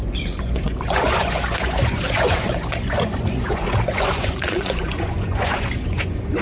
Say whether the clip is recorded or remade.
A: remade